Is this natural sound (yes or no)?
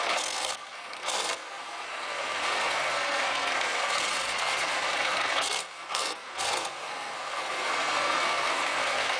no